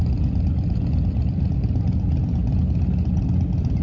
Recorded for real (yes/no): yes